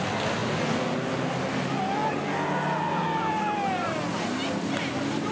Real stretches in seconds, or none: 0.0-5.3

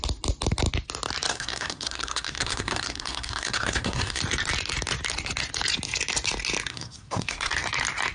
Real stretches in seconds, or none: 0.0-1.3; 4.2-6.7; 7.5-8.1

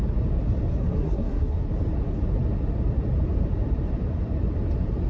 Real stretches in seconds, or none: 0.0-0.8; 1.7-5.1